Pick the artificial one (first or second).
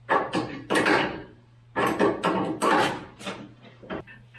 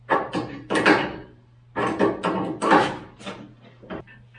first